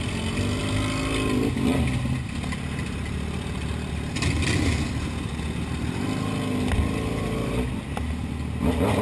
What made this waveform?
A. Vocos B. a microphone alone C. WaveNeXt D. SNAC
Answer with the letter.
B